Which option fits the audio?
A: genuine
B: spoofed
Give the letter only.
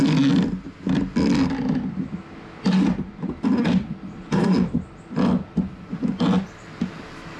A